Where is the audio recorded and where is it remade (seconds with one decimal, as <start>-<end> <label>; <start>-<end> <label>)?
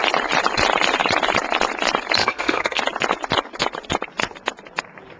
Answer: 0.0-2.2 recorded; 2.2-2.8 remade; 2.8-5.2 recorded